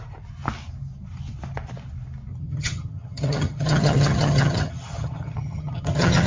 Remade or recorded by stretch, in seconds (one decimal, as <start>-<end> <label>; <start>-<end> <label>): 0.0-2.3 recorded; 2.3-6.3 remade